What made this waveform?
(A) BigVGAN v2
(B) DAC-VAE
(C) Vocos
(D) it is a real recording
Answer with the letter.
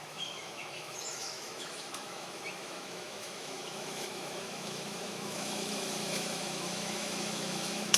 B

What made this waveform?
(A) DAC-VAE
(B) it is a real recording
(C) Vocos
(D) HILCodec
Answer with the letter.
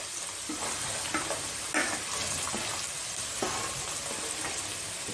B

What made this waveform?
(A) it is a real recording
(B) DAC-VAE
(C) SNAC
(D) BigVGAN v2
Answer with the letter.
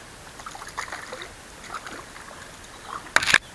A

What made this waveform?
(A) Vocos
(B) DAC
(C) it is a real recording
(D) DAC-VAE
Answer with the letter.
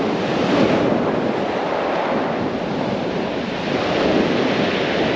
C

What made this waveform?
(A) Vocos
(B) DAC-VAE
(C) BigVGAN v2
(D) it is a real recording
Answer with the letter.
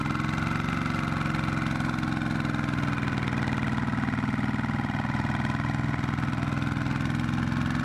D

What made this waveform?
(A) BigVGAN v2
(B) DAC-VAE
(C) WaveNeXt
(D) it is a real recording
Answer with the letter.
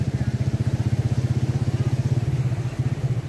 D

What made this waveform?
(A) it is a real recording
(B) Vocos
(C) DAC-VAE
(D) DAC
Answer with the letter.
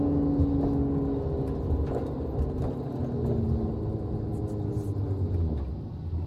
A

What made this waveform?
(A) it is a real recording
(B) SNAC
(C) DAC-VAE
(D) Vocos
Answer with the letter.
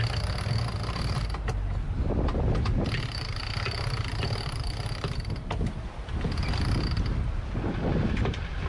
A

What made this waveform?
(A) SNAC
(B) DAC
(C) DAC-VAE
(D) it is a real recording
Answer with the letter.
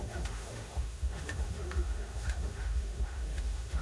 C